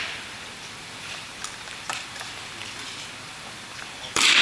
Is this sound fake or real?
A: fake